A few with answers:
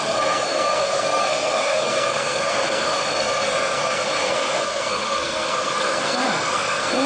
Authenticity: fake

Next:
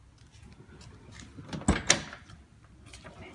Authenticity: real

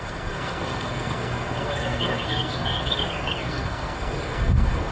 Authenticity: fake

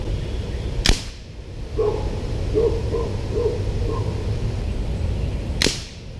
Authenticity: real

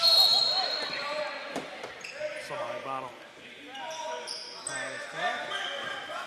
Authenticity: real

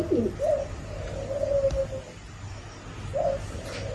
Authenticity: real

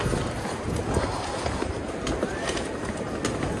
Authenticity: real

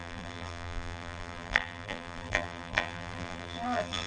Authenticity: fake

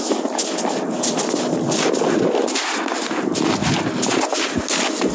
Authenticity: real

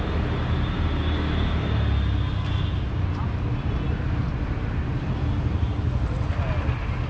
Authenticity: real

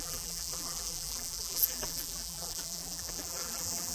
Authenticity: fake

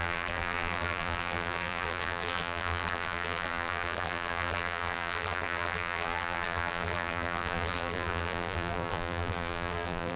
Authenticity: fake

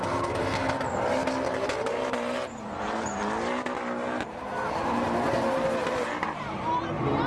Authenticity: real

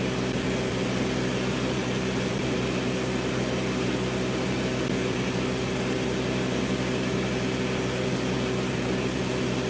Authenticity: real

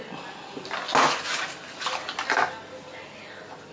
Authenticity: real